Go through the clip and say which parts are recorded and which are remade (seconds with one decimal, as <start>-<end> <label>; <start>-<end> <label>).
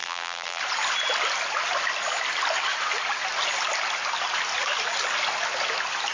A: 0.0-0.6 remade; 0.6-6.1 recorded